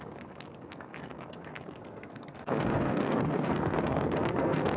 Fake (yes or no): yes